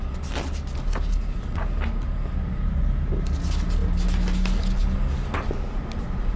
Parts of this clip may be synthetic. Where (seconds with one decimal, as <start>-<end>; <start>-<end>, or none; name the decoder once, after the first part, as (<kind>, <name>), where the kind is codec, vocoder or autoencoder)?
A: none